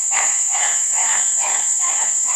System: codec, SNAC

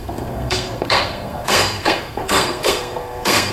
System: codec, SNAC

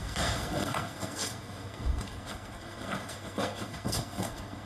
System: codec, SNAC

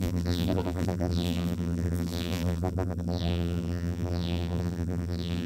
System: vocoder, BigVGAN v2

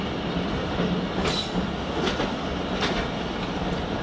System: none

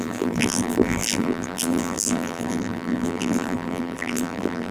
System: vocoder, BigVGAN v2